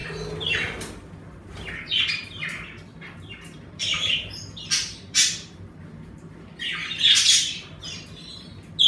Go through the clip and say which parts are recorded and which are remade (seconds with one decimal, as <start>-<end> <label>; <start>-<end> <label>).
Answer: 0.0-4.8 recorded; 4.8-6.1 remade; 6.1-8.9 recorded